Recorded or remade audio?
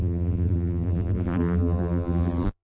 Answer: remade